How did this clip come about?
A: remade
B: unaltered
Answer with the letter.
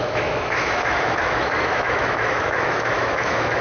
A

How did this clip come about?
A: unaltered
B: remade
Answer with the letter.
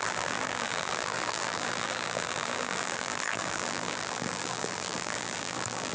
B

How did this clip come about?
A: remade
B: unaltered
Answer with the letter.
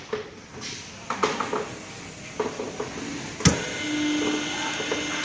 B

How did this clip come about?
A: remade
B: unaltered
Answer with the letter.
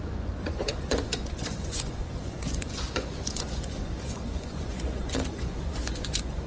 A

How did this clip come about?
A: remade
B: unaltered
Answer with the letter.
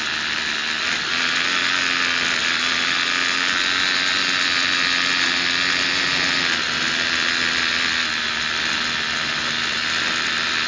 B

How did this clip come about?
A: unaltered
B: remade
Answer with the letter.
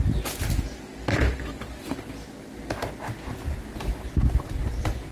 A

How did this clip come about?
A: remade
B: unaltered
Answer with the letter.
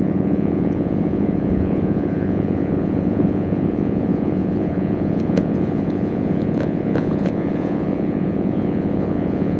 A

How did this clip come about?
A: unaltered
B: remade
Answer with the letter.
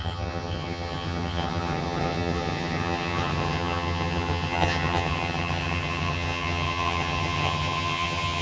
B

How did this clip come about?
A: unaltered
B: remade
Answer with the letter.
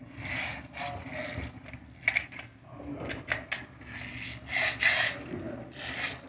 A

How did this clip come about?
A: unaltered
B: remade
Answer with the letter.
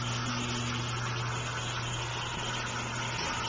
A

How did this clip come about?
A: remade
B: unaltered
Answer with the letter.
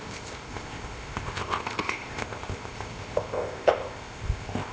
A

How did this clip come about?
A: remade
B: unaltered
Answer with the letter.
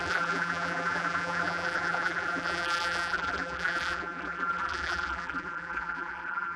A